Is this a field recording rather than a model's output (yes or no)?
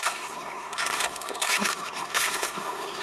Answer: no